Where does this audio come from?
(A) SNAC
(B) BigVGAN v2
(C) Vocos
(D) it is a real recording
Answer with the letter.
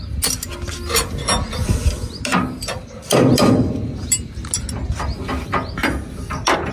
D